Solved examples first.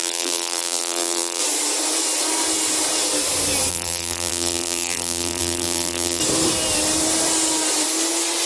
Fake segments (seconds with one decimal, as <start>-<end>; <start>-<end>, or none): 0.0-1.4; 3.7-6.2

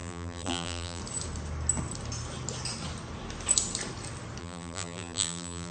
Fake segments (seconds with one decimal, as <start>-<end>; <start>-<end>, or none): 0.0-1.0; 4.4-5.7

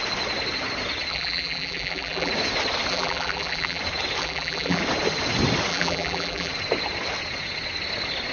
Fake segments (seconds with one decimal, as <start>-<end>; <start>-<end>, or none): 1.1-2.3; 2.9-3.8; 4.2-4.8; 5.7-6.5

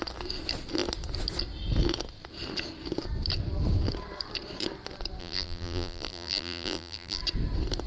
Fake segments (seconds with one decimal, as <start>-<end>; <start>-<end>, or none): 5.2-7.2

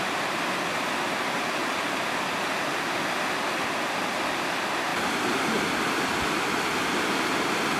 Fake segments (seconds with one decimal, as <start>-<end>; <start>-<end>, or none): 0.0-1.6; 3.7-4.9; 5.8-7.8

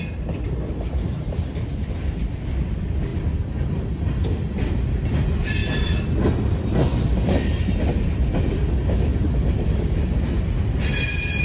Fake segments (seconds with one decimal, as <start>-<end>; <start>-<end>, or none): 3.1-3.8; 5.6-7.4; 9.1-10.0